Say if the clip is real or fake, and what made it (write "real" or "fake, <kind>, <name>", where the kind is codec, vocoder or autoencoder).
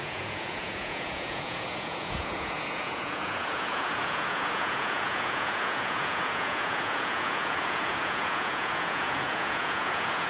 fake, vocoder, Vocos